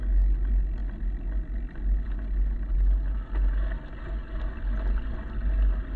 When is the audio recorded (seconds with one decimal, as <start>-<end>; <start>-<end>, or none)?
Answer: 0.0-6.0